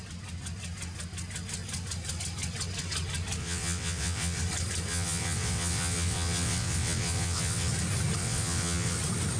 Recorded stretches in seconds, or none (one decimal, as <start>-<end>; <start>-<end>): 0.0-3.4; 4.4-4.9; 7.7-8.2; 9.0-9.4